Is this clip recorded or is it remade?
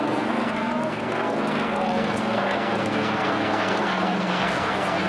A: remade